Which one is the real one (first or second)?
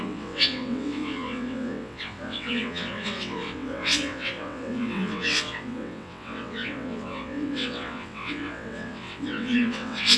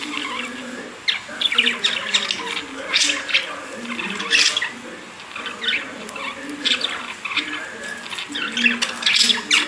second